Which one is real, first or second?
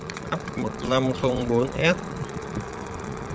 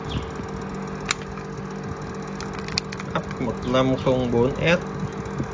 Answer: second